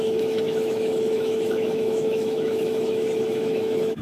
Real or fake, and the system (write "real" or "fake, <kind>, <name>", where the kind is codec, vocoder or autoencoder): fake, autoencoder, DAC-VAE